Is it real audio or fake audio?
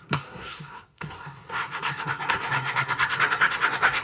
fake